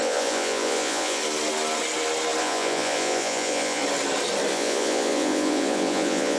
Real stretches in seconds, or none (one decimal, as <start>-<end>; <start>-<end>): 1.2-2.4; 3.8-4.5